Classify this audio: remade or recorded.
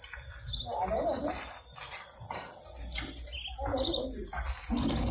recorded